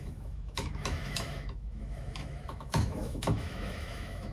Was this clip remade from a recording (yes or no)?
yes